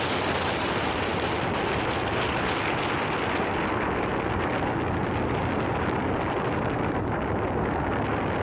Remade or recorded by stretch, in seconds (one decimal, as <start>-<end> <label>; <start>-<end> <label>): 0.0-8.4 recorded